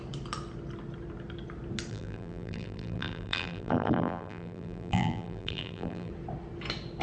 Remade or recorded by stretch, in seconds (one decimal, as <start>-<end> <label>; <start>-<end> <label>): 0.0-1.9 recorded; 1.9-6.1 remade; 6.1-7.0 recorded